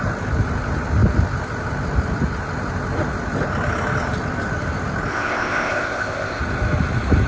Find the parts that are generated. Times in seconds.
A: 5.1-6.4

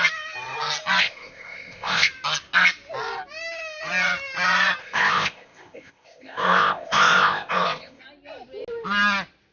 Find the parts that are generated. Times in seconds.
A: 1.0-2.1; 4.8-8.0

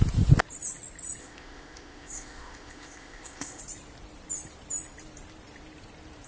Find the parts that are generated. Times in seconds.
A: 1.2-3.6

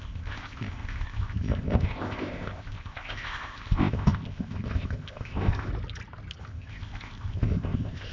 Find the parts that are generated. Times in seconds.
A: 0.0-5.7; 6.4-8.1

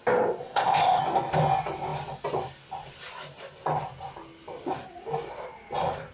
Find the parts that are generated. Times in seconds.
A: 0.4-1.0

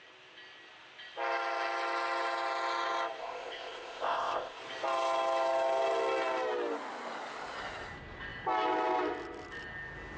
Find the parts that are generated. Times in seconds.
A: 3.2-4.6

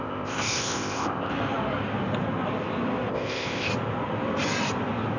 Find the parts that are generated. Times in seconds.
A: 0.0-1.3; 3.1-3.7